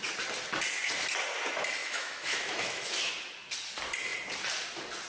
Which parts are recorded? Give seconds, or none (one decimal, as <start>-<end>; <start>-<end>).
0.0-1.8; 3.1-5.1